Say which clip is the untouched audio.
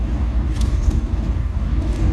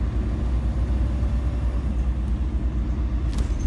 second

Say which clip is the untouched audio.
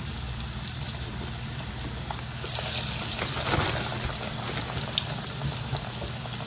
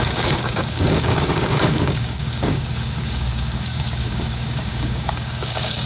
first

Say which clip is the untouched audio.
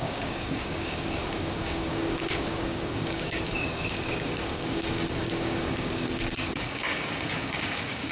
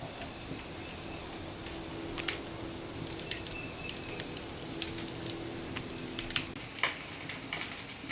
second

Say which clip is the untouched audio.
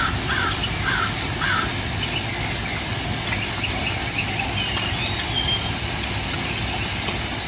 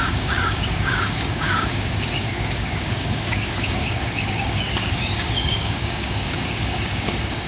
first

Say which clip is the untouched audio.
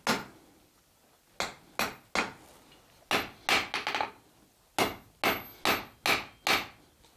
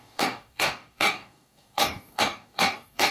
first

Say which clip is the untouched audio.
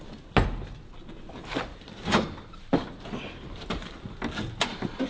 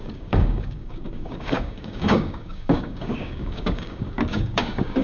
first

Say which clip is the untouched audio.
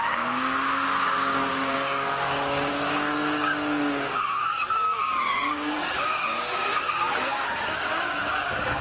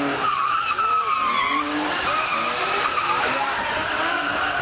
second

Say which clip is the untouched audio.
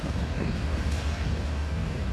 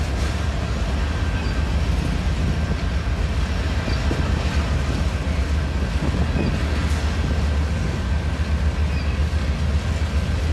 second